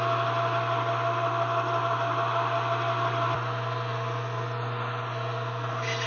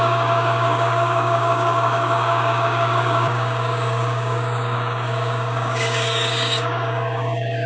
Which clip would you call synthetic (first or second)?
second